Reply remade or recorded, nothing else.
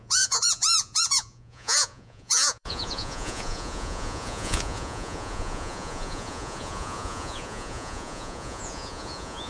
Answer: remade